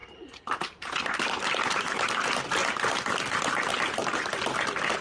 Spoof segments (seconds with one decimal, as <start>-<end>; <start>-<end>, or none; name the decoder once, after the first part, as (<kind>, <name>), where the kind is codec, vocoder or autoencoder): 0.0-1.6 (vocoder, BigVGAN v2)